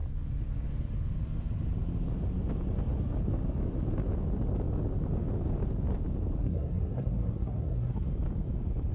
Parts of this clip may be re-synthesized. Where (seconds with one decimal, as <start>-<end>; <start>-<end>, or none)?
6.4-8.1